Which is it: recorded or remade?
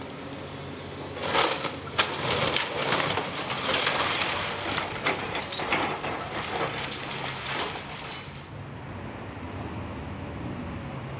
recorded